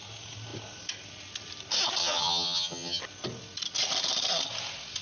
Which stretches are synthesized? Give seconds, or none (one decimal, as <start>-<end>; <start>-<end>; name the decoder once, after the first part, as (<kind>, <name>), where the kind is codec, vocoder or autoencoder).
2.0-3.0 (vocoder, HiFi-GAN)